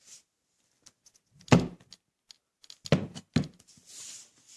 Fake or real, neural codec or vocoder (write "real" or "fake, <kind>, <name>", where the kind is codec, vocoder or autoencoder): real